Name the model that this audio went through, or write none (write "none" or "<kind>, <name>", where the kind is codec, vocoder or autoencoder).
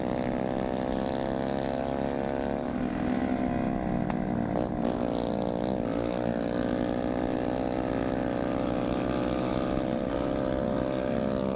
none